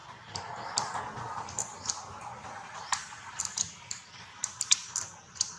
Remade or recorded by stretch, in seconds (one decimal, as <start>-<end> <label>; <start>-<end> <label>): 0.0-5.6 recorded